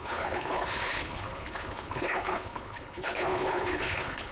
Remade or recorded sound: remade